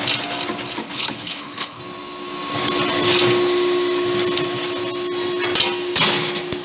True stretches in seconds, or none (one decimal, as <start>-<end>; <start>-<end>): 0.0-0.8; 1.8-6.6